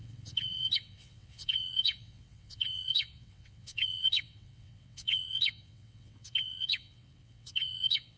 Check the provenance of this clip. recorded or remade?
remade